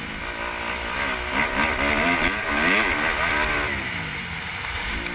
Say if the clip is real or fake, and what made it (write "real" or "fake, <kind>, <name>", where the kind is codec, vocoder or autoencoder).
real